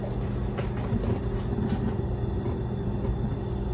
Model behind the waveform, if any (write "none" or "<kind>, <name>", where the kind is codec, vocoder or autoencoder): none